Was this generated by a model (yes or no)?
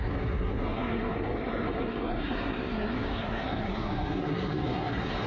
yes